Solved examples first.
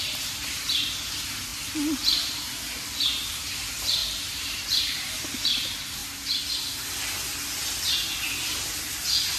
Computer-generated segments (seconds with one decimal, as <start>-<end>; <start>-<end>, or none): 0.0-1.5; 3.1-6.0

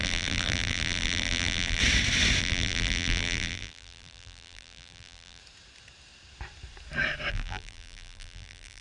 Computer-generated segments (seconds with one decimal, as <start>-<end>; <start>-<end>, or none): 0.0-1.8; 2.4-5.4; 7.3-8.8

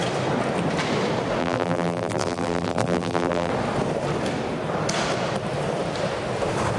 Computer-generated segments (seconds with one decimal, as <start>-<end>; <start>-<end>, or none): 1.4-3.5

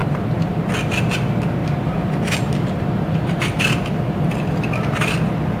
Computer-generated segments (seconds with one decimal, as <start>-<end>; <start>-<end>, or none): 0.0-0.7; 1.6-3.6

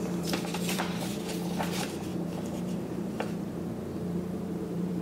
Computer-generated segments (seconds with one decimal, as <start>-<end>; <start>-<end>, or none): 0.0-1.1; 1.6-5.0

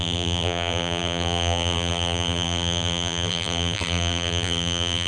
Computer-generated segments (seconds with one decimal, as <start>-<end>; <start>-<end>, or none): 0.0-5.1

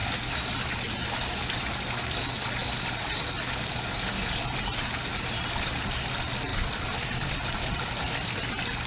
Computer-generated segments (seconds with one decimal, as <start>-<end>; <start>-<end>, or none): 0.0-4.4; 5.1-6.0; 6.5-7.8

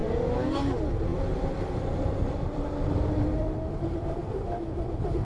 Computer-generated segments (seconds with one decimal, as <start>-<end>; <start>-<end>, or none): 0.0-0.6; 1.1-4.2